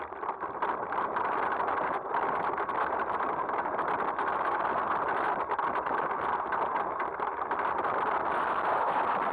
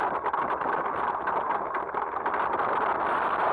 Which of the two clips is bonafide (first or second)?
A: second